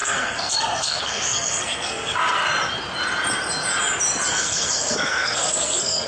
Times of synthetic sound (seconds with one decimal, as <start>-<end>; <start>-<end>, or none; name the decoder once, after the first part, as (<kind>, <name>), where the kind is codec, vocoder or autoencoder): 0.0-2.4 (codec, SNAC); 4.3-6.1